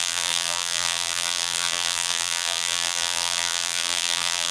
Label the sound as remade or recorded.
remade